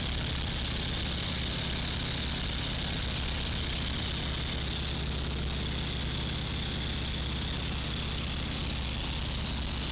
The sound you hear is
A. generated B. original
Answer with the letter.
B